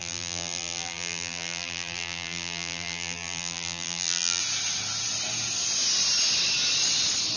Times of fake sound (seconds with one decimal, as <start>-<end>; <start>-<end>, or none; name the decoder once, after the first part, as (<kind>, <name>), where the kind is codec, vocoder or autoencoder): 0.0-4.4 (vocoder, BigVGAN v2)